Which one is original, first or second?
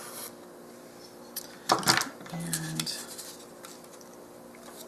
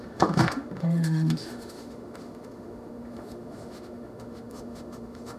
first